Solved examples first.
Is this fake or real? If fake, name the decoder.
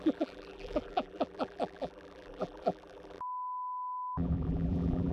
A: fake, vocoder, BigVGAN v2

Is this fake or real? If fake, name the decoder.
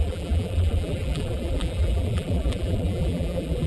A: fake, vocoder, BigVGAN v2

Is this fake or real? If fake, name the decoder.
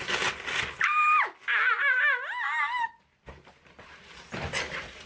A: real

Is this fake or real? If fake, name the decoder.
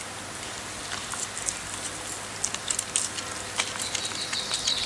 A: real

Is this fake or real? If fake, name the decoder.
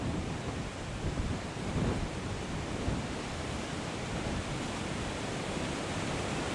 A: fake, vocoder, BigVGAN v2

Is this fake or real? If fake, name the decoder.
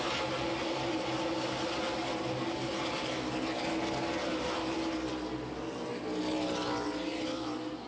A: real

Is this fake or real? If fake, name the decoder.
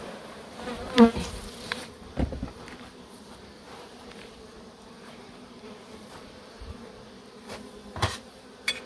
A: fake, vocoder, BigVGAN v2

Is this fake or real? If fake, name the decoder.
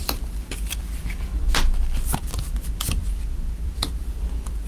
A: fake, vocoder, BigVGAN v2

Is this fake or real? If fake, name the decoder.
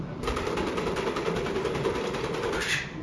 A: fake, vocoder, BigVGAN v2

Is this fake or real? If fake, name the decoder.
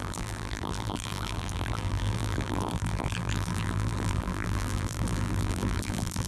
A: fake, vocoder, BigVGAN v2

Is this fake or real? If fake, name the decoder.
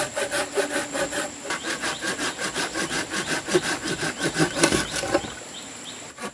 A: real